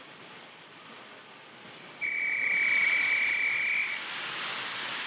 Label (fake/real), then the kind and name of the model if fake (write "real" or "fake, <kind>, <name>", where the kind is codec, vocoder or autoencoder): fake, vocoder, BigVGAN v2